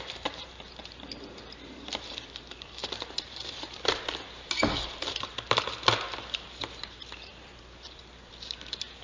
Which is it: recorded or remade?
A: remade